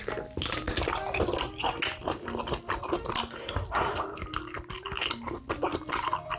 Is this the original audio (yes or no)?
yes